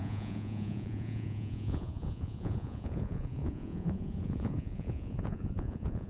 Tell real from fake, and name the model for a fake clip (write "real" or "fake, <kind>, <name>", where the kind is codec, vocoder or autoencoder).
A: fake, vocoder, Vocos